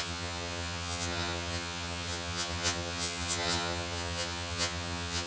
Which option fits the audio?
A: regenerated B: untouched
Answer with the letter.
A